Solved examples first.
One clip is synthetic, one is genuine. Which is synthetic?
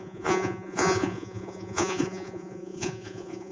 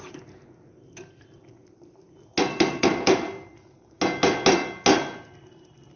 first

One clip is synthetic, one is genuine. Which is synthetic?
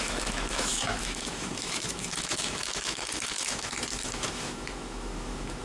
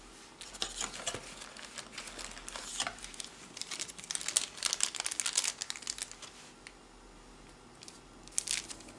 first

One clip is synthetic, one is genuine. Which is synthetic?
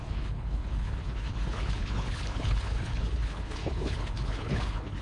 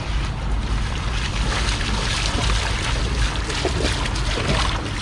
first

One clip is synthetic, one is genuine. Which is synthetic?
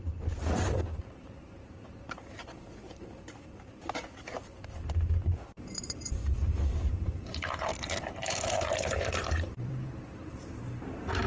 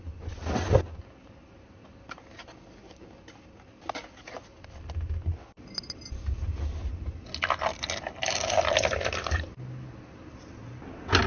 first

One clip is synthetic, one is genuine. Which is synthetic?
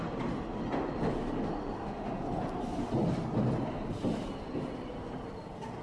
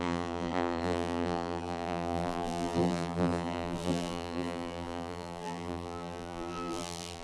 second